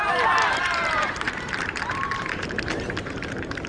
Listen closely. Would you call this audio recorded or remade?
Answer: remade